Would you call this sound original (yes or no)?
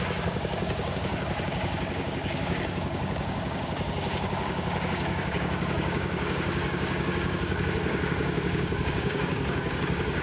no